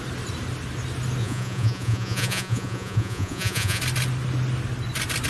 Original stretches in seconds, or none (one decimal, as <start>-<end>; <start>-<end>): 0.0-1.2; 3.8-5.3

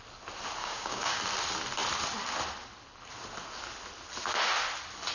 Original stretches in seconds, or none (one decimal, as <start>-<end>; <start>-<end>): 0.0-0.6; 1.2-5.1

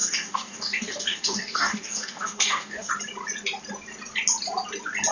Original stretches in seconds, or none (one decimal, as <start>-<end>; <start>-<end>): 2.9-5.1

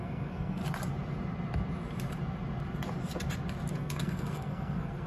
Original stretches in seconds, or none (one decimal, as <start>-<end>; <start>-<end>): 0.6-3.7

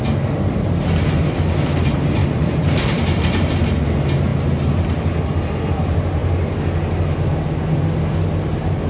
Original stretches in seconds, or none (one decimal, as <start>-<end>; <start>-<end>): 0.0-2.2; 3.7-8.9

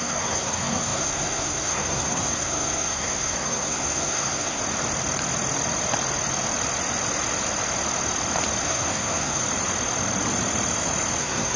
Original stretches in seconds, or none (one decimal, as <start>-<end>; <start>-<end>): 4.6-8.6; 9.4-11.2

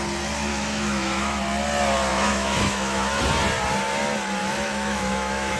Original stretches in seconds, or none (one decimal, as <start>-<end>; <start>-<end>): 0.0-0.5; 1.4-2.1; 3.2-4.4